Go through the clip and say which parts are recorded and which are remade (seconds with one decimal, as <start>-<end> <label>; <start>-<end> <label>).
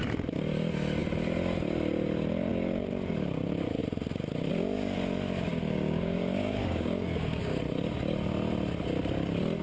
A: 0.0-5.5 recorded; 5.5-7.6 remade; 7.6-9.6 recorded